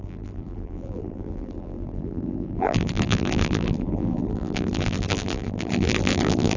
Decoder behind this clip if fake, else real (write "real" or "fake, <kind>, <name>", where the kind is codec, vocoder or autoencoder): fake, vocoder, BigVGAN v2